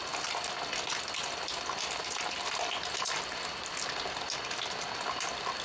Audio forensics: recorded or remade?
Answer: recorded